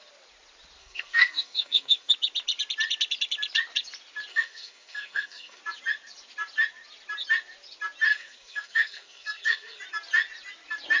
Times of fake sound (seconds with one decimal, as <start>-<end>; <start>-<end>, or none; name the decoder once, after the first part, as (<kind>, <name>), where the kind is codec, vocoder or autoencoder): 0.8-2.1 (codec, SNAC); 4.3-5.6; 8.1-9.8